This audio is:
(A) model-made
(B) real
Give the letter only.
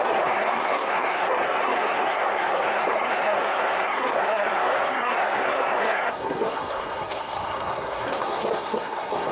A